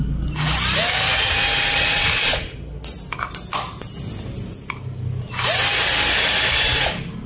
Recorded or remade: recorded